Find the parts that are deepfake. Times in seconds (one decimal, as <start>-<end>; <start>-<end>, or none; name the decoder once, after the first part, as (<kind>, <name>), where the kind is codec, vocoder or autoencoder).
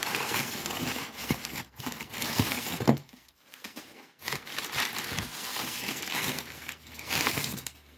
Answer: 0.0-4.5 (codec, SNAC); 5.0-8.0